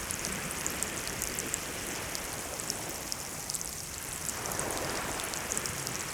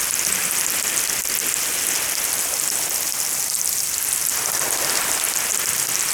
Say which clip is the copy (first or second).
first